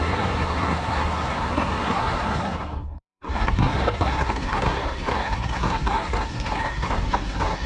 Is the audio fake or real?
fake